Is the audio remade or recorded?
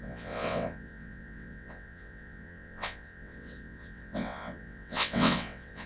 remade